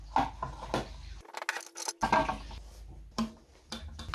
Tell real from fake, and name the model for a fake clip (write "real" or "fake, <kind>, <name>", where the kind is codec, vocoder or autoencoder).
real